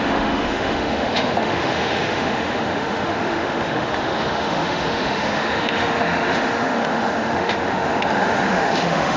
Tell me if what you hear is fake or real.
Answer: fake